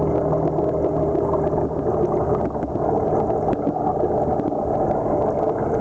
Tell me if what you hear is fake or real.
real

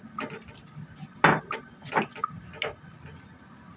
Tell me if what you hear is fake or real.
real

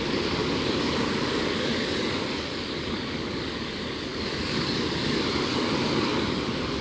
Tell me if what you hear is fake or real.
fake